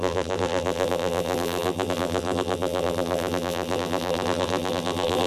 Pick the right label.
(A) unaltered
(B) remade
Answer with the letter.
B